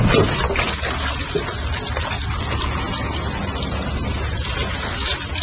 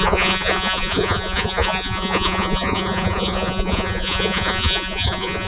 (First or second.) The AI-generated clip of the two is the second